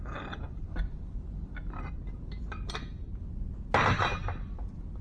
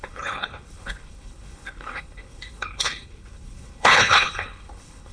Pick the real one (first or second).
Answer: first